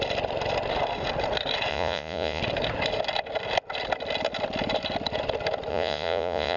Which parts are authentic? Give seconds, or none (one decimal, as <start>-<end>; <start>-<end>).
0.0-1.7; 2.4-5.7